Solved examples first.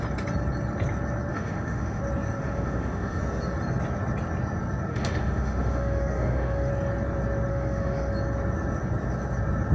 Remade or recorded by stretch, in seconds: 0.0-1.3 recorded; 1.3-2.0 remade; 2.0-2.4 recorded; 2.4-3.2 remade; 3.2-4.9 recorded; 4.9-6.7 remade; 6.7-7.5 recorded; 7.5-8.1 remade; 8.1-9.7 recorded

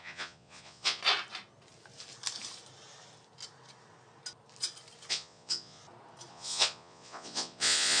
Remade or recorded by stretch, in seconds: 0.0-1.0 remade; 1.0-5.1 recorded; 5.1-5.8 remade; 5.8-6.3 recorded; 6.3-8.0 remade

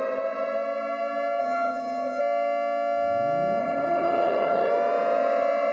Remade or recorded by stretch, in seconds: 0.0-1.4 recorded; 1.4-2.2 remade; 2.2-3.6 recorded; 3.6-4.7 remade; 4.7-5.7 recorded